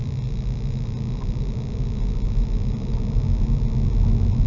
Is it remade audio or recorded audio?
recorded